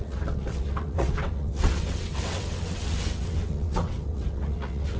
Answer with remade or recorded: remade